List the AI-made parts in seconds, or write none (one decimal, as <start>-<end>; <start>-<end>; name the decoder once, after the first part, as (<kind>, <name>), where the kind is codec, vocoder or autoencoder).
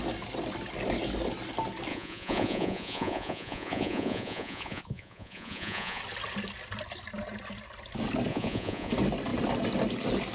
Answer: 1.9-6.0 (vocoder, Vocos); 8.3-8.9